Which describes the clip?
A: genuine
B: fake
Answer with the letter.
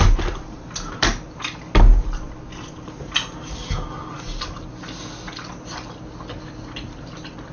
A